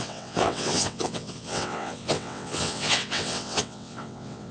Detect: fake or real fake